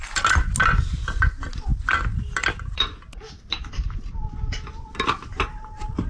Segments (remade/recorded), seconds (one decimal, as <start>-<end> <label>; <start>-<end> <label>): 0.0-6.1 recorded